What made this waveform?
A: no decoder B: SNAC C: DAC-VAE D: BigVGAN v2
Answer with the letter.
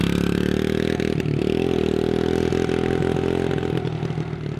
A